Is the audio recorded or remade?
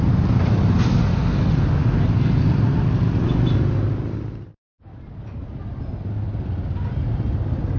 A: recorded